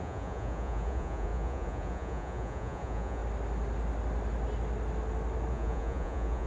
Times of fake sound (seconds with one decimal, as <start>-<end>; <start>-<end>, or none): 0.0-3.2; 5.5-6.5